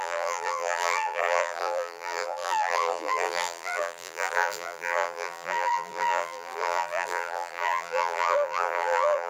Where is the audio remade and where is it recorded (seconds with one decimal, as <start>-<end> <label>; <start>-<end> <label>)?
0.0-9.3 remade